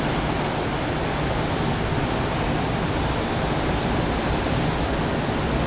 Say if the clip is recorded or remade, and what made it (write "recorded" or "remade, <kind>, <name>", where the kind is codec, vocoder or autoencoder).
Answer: recorded